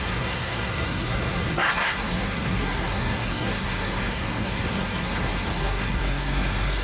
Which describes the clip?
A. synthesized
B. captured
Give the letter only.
A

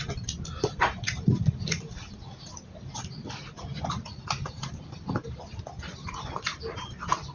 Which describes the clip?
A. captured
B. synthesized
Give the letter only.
A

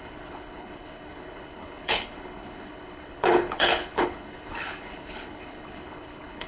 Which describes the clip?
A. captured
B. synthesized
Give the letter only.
B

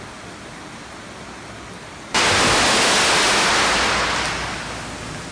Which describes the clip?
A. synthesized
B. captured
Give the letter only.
B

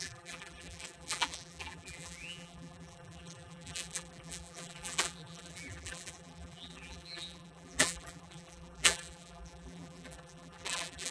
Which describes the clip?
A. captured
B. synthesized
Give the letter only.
B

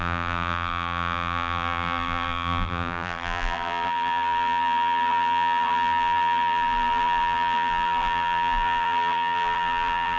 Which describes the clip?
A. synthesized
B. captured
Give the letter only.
A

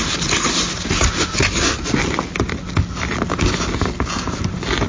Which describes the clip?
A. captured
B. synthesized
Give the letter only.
A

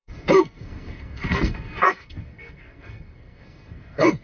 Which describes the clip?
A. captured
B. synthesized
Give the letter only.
B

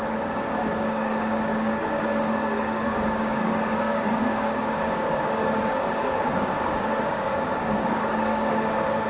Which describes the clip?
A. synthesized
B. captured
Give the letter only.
A